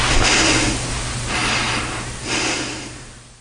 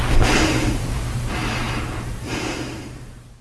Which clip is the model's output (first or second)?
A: second